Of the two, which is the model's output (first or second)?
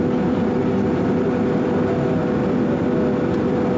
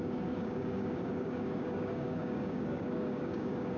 second